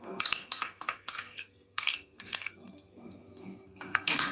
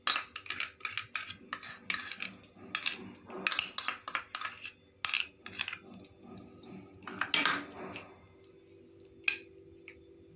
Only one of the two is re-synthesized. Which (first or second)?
first